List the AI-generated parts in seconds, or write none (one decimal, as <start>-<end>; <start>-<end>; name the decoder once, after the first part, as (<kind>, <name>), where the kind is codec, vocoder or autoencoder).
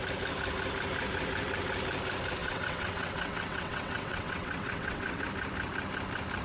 2.4-5.2 (vocoder, WaveNeXt)